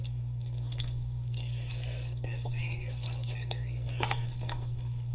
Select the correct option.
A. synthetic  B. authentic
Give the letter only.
A